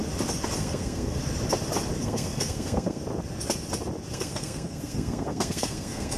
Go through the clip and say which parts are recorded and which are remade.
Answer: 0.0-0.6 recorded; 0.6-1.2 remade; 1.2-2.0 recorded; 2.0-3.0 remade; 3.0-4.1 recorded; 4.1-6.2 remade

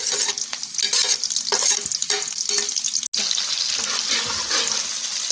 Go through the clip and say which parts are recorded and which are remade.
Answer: 0.0-5.3 recorded

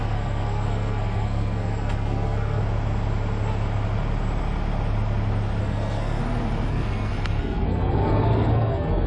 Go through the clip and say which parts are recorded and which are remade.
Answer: 0.0-2.6 remade; 2.6-5.6 recorded; 5.6-6.2 remade; 6.2-6.7 recorded; 6.7-9.1 remade

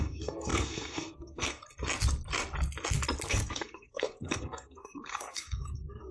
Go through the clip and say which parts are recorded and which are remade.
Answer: 0.0-1.6 remade; 1.6-3.3 recorded; 3.3-6.1 remade